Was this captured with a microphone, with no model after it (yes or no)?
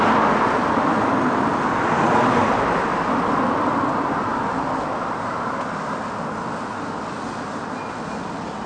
yes